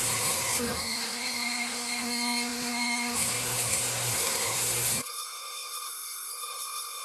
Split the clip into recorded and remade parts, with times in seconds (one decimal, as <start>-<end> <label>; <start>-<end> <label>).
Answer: 0.0-7.0 remade